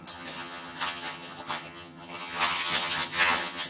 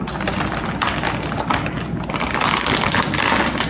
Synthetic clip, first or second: first